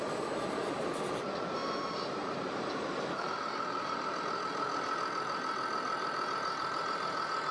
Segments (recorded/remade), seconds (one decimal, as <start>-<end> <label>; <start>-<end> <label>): 0.0-1.6 recorded; 1.6-4.2 remade; 4.2-7.5 recorded